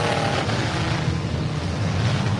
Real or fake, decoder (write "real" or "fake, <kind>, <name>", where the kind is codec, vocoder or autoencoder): real